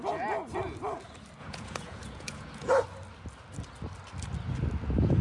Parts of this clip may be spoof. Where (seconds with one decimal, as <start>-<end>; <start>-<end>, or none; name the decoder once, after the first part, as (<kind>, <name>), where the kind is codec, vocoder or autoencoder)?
1.4-2.7 (vocoder, Vocos)